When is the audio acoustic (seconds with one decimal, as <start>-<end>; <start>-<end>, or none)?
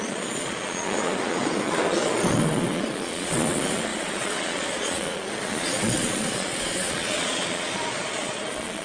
none